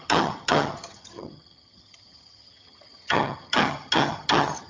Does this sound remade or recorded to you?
remade